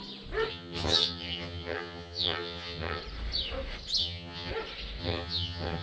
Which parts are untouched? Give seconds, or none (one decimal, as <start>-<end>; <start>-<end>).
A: 0.0-0.5; 3.0-4.0; 4.5-5.0